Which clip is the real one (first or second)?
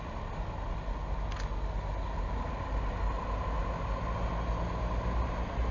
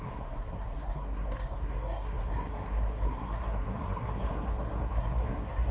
first